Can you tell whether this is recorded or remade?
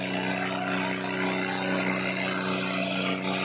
recorded